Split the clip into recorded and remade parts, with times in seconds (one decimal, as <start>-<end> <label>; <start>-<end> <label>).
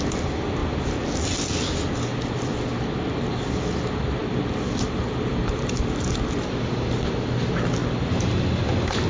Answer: 0.0-9.1 recorded